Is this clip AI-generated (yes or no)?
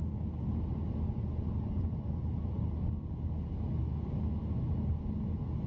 no